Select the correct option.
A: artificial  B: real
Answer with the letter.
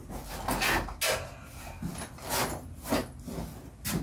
B